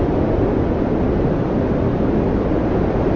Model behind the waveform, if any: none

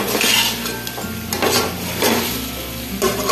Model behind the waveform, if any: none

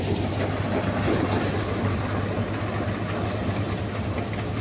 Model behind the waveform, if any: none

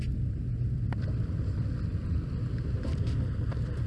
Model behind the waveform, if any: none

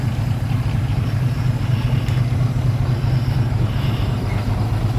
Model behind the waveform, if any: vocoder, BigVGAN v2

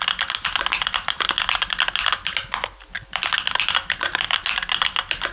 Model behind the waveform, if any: none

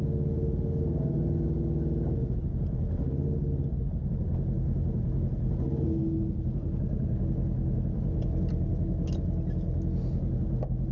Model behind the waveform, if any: none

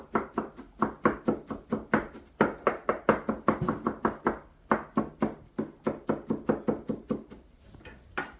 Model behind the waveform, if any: none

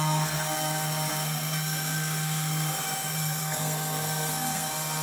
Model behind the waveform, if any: codec, SNAC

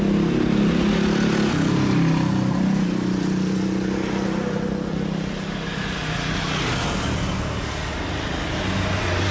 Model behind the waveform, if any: none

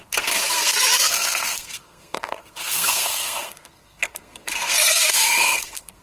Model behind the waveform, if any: codec, SNAC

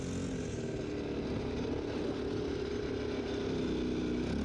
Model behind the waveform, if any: none